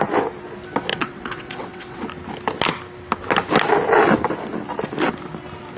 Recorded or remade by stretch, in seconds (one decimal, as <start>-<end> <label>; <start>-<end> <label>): 0.0-0.9 recorded; 0.9-2.0 remade; 2.0-5.8 recorded